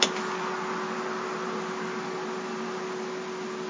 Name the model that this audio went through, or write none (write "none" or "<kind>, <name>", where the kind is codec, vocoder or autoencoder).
none